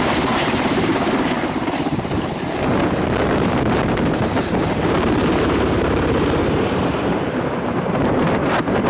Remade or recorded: remade